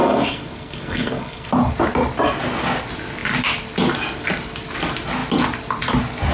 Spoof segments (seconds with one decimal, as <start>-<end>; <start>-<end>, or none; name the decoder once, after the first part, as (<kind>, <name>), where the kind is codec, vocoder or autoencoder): 0.0-1.5 (codec, SNAC)

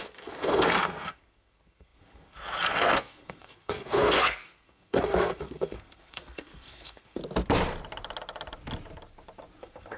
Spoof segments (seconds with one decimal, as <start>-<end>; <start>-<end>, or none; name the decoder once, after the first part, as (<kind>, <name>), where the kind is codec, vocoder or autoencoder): 0.0-7.2 (codec, SNAC); 9.6-10.0

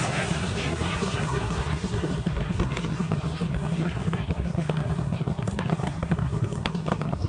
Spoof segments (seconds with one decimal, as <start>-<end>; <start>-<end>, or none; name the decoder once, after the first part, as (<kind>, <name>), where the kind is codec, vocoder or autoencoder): 0.0-7.3 (codec, SNAC)

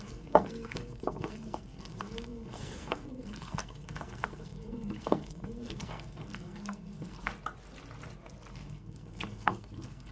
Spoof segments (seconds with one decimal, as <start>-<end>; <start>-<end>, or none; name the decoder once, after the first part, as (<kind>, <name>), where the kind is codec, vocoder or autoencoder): 0.0-7.3 (codec, SNAC); 8.5-10.1

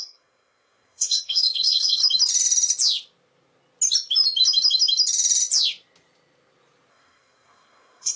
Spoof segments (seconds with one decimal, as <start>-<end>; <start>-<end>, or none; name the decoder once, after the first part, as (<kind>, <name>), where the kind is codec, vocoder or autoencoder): 0.0-2.0 (codec, SNAC); 6.9-8.2

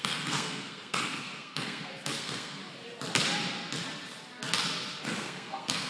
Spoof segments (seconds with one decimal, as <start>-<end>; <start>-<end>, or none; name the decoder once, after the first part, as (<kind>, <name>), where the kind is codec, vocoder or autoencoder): 0.0-2.6 (codec, SNAC); 5.0-5.9

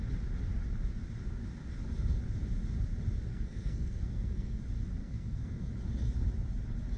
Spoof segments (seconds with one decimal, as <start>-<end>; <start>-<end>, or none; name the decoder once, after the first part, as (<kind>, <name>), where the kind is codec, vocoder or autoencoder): 3.3-4.6 (codec, SNAC); 5.0-5.7